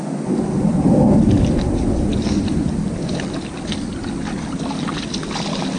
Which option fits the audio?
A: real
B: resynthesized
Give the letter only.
A